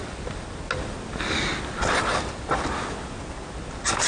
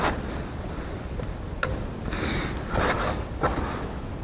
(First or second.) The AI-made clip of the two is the second